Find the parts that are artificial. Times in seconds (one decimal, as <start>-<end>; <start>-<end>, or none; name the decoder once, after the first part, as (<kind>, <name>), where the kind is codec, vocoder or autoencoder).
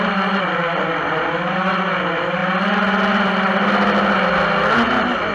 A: none